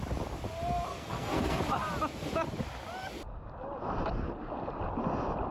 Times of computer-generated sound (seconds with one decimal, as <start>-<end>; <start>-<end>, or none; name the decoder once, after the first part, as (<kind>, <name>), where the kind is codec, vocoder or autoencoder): 0.9-1.6 (codec, SNAC)